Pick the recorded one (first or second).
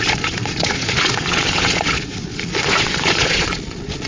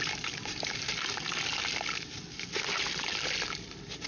second